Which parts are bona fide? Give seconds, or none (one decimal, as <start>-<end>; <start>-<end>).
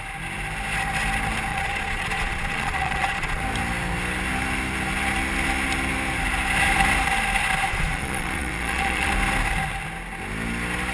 0.0-1.5; 3.4-7.7; 9.1-10.9